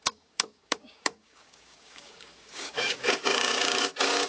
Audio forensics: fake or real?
fake